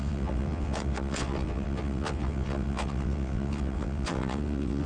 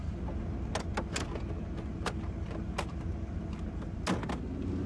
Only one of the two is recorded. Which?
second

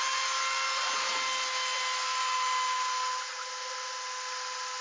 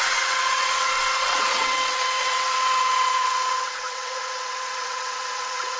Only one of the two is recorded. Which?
first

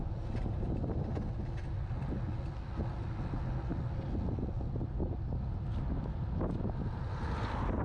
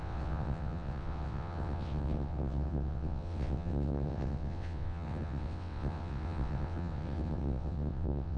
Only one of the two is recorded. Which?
first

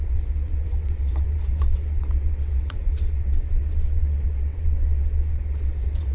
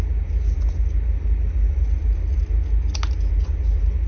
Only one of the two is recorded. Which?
second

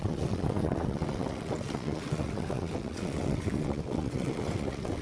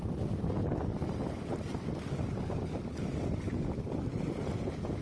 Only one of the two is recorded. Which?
second